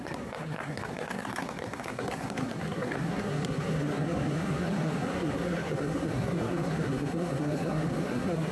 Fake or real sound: fake